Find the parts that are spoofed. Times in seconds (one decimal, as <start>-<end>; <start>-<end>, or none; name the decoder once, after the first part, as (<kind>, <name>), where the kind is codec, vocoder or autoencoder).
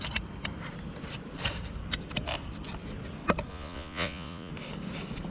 3.5-4.5 (vocoder, Vocos)